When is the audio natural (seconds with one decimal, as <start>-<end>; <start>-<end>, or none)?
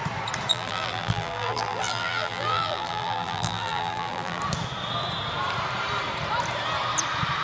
0.0-0.5; 4.4-7.4